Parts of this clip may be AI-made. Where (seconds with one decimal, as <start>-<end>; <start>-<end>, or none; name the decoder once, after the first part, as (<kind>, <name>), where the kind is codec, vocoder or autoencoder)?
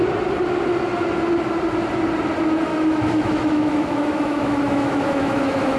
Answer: 2.7-5.8 (autoencoder, DAC-VAE)